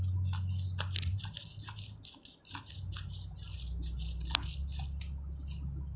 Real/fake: real